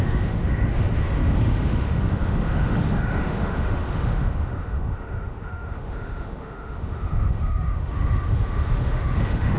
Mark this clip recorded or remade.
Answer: remade